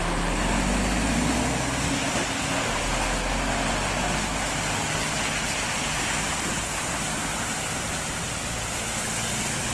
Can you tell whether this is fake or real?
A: real